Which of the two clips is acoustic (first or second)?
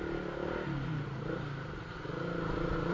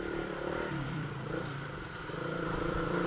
first